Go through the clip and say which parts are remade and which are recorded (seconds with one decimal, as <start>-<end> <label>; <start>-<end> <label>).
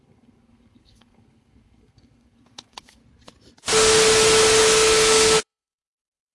0.0-3.0 remade; 3.0-4.6 recorded; 4.6-6.3 remade